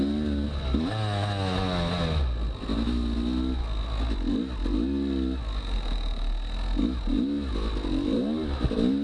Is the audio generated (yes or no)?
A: no